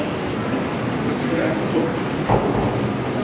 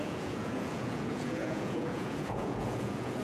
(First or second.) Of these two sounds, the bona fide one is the first